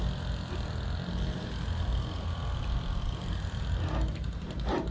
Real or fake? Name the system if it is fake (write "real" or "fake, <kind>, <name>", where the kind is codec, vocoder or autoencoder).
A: real